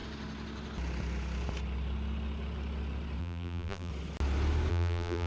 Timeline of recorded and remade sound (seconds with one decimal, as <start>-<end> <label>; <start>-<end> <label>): 0.0-3.2 recorded; 3.2-3.9 remade; 3.9-4.7 recorded; 4.7-5.3 remade